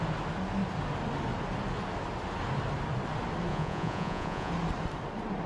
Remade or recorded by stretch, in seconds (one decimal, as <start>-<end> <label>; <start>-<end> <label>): 0.0-3.5 recorded; 3.5-4.5 remade; 4.5-5.5 recorded